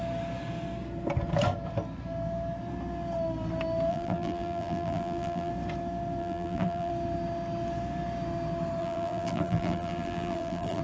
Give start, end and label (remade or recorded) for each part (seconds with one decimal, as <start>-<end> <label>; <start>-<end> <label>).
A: 0.0-3.9 recorded; 3.9-5.5 remade; 5.5-6.2 recorded; 6.2-6.9 remade; 6.9-8.8 recorded; 8.8-10.8 remade